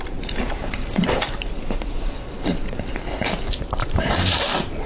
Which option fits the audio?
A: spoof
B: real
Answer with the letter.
A